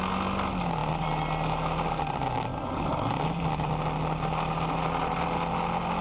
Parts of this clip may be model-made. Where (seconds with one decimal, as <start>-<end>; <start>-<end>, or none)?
none